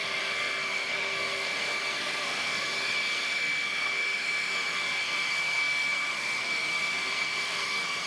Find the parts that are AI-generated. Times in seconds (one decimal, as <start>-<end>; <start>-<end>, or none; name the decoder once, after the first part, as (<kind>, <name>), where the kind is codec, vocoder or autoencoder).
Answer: 0.0-8.1 (codec, SNAC)